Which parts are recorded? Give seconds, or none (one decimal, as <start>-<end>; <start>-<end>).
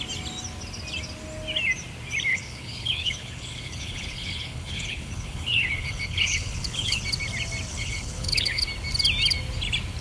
0.0-2.3; 7.0-7.7; 8.6-10.0